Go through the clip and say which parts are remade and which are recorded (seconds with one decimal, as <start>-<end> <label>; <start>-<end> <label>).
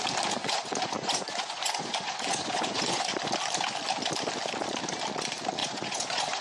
0.0-0.4 recorded; 0.4-3.1 remade; 3.1-5.6 recorded; 5.6-6.4 remade